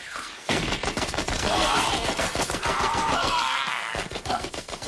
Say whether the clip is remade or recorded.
remade